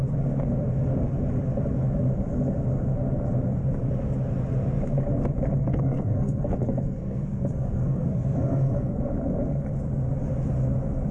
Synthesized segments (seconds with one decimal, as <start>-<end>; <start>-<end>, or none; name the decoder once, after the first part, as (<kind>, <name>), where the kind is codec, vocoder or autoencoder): 5.6-9.0 (codec, SNAC)